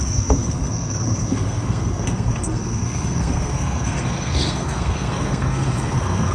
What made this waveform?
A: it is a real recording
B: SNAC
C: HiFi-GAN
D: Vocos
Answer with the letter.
B